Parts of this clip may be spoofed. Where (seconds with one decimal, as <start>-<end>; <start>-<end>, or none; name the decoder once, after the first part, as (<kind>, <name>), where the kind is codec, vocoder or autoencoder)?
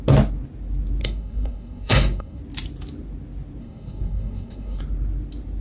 1.0-2.4 (codec, SNAC); 3.6-4.8